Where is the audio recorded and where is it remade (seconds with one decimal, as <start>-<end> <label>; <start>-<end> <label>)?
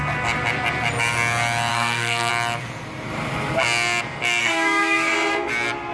0.0-1.7 recorded; 1.7-2.3 remade; 2.3-4.4 recorded; 4.4-5.5 remade; 5.5-5.9 recorded